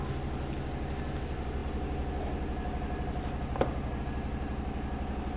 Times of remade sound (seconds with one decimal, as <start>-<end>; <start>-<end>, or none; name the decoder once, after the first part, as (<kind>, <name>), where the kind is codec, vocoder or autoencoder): none